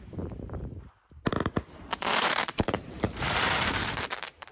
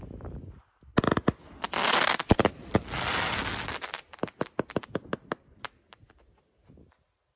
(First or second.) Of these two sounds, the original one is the second